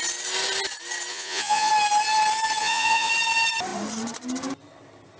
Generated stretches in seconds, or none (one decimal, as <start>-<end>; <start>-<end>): 1.1-1.7; 2.6-3.1